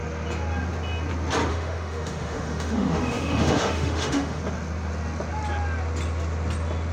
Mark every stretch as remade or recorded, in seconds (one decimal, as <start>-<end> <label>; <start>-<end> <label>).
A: 0.0-1.5 recorded; 1.5-4.4 remade; 4.4-6.9 recorded